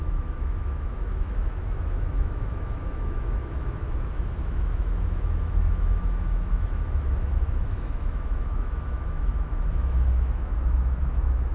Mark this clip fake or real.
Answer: fake